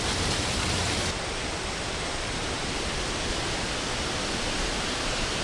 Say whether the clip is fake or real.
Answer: real